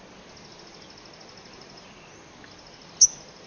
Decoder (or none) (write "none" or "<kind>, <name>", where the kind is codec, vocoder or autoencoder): none